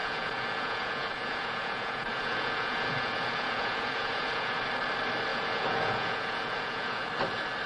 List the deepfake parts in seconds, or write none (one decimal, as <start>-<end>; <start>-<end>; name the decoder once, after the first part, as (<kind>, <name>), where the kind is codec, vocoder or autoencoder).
0.0-4.6 (vocoder, Vocos); 5.3-7.1